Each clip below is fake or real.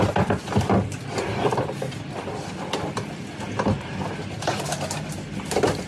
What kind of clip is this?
real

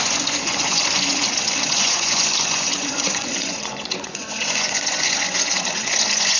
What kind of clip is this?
fake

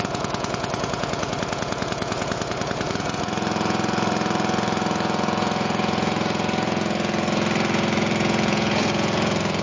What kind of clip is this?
fake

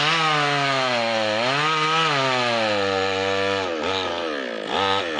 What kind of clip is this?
real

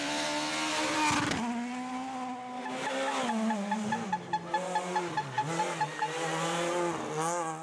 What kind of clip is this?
real